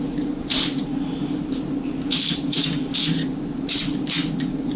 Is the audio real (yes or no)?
yes